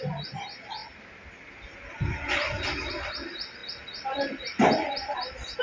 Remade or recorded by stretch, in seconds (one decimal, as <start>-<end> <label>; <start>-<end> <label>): 0.0-5.6 recorded